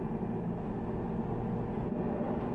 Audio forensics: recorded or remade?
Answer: recorded